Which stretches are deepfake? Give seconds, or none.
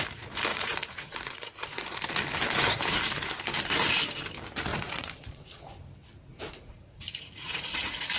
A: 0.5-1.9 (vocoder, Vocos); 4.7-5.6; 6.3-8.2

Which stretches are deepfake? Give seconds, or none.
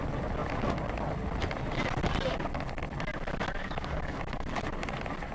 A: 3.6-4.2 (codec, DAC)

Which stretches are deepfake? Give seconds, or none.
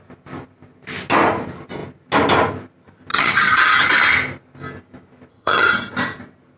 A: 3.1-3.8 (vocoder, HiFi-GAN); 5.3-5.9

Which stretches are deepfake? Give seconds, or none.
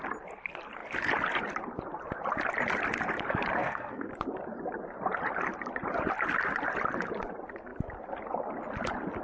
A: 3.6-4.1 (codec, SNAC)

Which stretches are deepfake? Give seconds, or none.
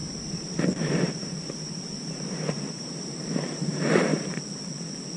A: 0.0-4.1 (vocoder, BigVGAN v2)